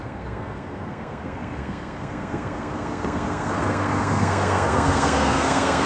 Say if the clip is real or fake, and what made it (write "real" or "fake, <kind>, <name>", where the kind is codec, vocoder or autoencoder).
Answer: fake, codec, SNAC